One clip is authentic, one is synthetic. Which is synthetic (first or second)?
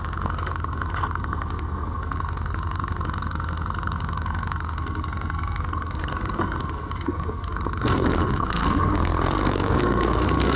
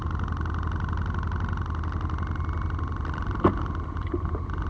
first